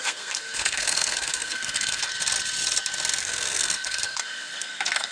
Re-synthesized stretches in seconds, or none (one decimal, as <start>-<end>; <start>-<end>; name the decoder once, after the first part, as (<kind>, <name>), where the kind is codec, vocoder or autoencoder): 0.0-2.1 (codec, SNAC); 3.2-5.1